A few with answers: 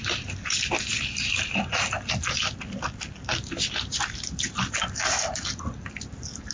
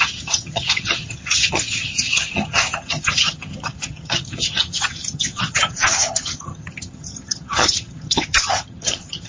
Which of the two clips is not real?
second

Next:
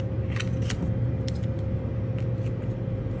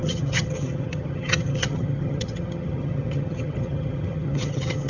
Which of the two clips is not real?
second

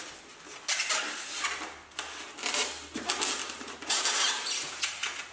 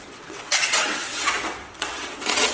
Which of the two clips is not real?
second